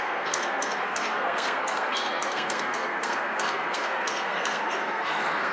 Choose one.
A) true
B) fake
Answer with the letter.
B